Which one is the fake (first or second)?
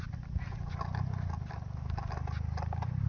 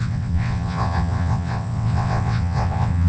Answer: second